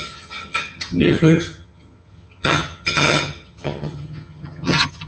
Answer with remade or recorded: remade